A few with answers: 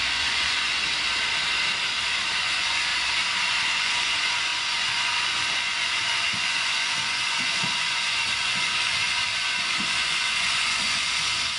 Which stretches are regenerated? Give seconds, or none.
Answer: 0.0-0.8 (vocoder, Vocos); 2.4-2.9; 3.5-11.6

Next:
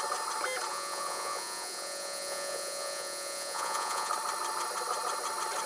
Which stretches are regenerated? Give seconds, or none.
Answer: 0.7-4.1 (vocoder, Vocos)